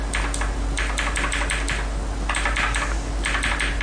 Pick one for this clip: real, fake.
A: real